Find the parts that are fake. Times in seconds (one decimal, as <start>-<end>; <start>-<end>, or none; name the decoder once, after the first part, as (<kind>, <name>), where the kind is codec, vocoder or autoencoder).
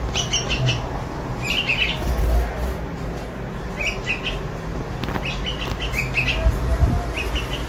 none